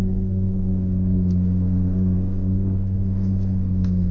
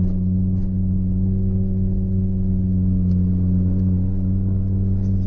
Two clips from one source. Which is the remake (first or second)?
first